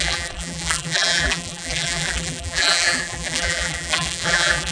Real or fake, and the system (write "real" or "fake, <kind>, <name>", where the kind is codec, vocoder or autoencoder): fake, vocoder, BigVGAN v2